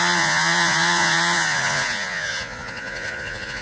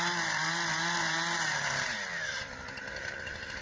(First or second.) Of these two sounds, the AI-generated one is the first